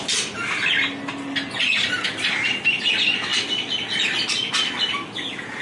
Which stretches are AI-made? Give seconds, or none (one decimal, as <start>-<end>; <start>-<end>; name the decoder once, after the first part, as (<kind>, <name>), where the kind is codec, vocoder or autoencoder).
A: none